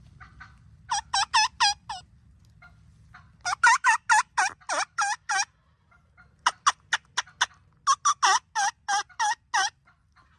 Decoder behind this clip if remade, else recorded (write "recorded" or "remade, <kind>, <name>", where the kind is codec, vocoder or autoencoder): recorded